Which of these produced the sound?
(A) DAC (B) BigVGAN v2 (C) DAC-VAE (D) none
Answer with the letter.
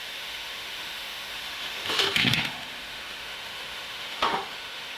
C